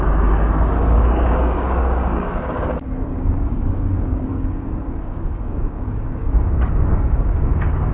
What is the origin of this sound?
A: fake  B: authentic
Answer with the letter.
A